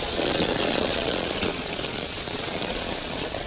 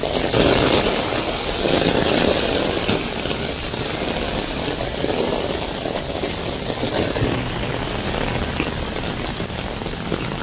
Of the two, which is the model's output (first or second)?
first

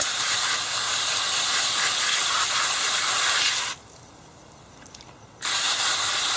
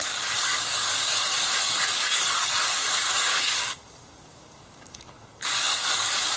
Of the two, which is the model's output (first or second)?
second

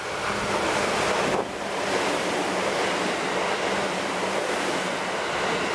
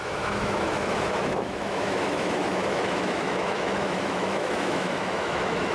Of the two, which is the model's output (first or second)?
second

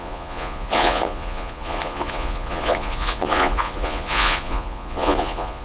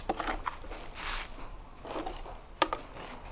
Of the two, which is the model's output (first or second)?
first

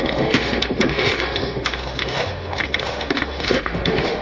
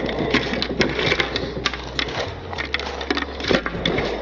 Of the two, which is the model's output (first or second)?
first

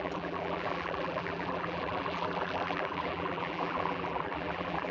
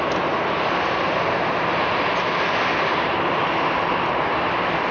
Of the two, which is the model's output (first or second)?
first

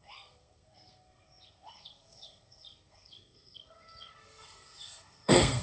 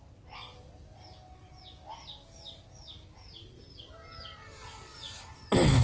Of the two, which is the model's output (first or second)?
first